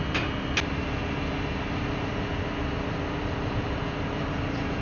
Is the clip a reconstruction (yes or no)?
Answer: no